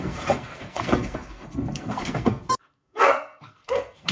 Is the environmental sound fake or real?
fake